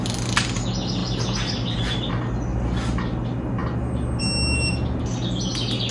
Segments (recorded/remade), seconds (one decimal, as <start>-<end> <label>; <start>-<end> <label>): 0.0-5.9 recorded